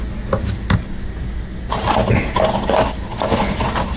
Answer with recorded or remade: recorded